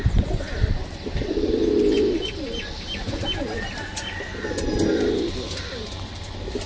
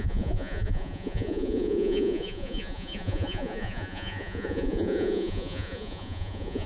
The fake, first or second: second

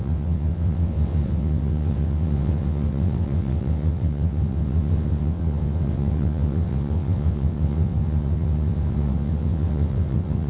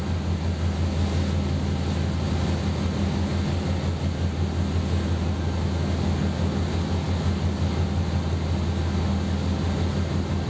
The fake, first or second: first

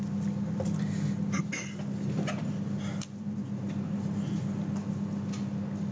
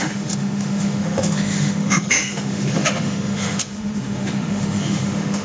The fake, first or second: second